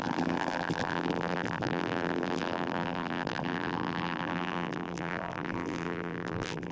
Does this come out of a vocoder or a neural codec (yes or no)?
yes